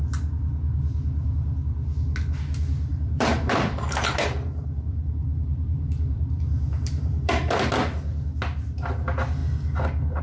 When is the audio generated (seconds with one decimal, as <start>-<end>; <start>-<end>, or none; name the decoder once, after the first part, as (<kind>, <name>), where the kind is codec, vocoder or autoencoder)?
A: 2.9-7.7 (vocoder, BigVGAN v2)

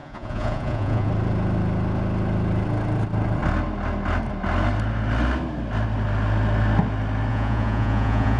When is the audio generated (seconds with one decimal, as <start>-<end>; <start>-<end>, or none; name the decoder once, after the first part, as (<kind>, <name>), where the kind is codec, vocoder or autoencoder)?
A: 0.0-1.1 (vocoder, Vocos); 7.3-8.4